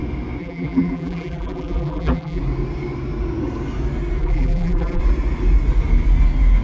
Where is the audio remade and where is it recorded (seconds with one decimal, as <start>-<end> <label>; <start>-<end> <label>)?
0.0-0.4 recorded; 0.4-2.4 remade; 2.4-4.2 recorded; 4.2-5.0 remade; 5.0-6.6 recorded